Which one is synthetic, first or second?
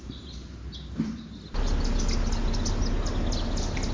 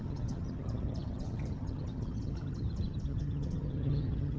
second